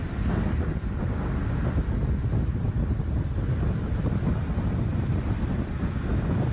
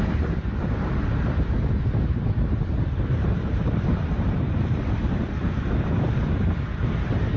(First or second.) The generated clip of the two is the second